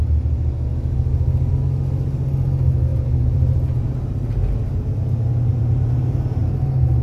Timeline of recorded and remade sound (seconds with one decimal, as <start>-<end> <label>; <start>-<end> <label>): 0.0-2.9 recorded; 2.9-4.6 remade; 4.6-5.5 recorded; 5.5-6.4 remade; 6.4-7.0 recorded